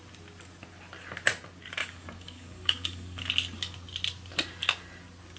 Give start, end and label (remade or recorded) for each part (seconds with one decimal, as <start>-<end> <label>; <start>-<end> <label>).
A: 0.0-1.8 recorded; 1.8-3.3 remade; 3.3-5.4 recorded